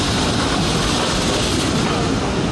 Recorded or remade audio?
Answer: recorded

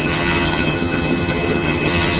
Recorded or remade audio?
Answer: remade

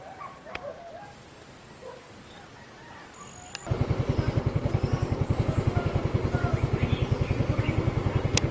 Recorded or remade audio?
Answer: recorded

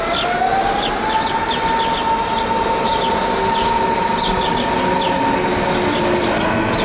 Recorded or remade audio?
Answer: recorded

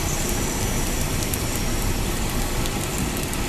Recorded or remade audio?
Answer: remade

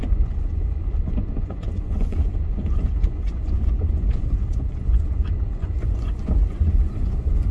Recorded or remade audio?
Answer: remade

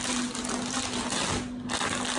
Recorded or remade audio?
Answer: recorded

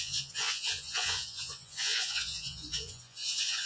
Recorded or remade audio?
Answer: remade